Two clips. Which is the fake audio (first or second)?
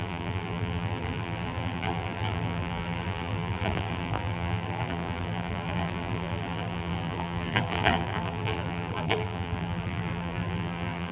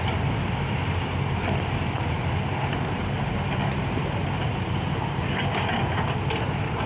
first